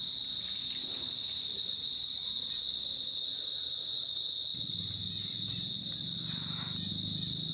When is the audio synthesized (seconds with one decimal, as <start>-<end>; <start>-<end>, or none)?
none